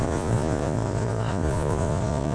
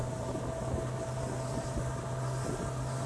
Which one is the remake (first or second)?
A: first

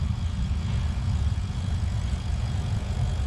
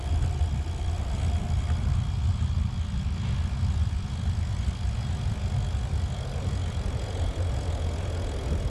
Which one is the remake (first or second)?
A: first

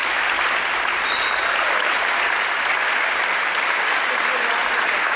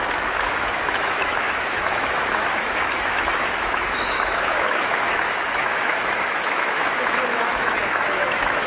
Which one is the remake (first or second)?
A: second